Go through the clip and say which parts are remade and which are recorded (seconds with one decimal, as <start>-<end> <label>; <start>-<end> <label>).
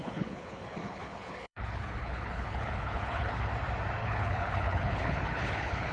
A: 0.0-3.5 remade; 3.5-4.0 recorded; 4.0-5.9 remade